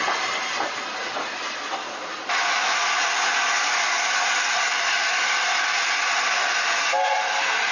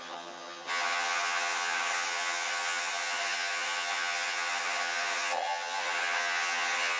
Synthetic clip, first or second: second